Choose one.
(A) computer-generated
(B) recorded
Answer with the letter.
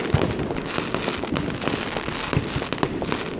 B